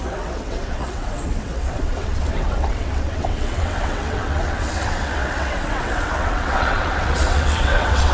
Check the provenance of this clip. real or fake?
fake